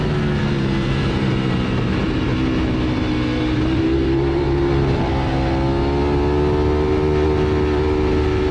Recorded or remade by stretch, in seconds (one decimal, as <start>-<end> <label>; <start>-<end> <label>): 0.0-0.5 recorded; 0.5-2.3 remade; 2.3-3.4 recorded; 3.4-5.1 remade; 5.1-8.5 recorded